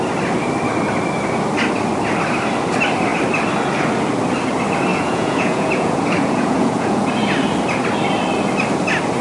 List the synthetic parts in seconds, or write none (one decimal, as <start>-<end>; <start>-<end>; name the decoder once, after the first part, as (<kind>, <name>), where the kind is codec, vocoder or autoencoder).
4.9-7.1 (vocoder, Vocos)